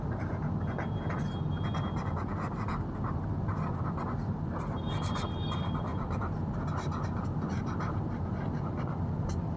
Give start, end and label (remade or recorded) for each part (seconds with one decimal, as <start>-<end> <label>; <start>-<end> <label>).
0.0-5.9 recorded; 5.9-9.6 remade